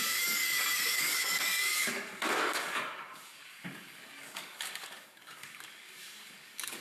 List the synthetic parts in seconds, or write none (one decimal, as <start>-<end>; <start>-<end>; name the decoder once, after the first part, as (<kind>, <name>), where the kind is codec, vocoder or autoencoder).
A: 0.0-6.8 (codec, DAC)